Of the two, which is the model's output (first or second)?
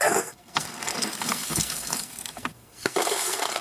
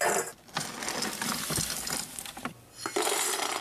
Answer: first